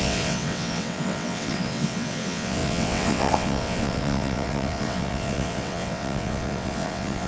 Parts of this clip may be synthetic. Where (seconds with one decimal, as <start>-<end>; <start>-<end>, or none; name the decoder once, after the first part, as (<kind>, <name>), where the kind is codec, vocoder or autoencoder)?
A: 0.0-7.3 (vocoder, WaveNeXt)